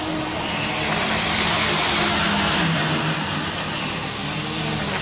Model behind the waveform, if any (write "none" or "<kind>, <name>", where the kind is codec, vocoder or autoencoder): none